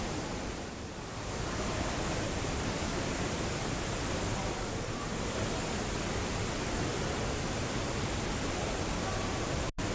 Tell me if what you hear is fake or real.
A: real